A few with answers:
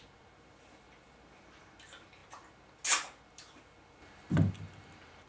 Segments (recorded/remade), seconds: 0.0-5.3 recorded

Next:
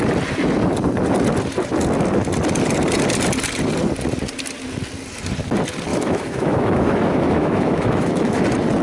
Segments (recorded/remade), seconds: 0.0-5.9 recorded; 5.9-8.4 remade; 8.4-8.8 recorded

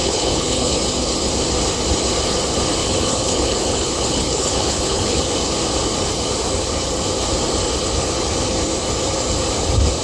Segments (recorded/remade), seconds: 0.0-0.7 remade; 0.7-2.8 recorded; 2.8-5.2 remade; 5.2-10.0 recorded

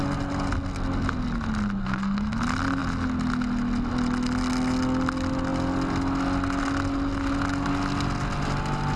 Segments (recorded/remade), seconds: 0.0-1.8 recorded; 1.8-2.4 remade; 2.4-9.0 recorded

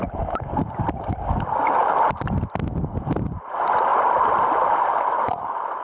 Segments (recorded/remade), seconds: 0.0-5.8 recorded

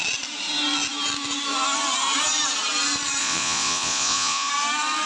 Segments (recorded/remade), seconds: 0.0-3.2 recorded; 3.2-4.5 remade; 4.5-5.1 recorded